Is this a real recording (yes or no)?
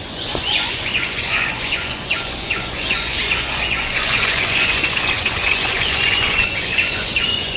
no